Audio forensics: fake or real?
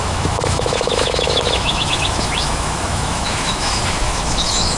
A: fake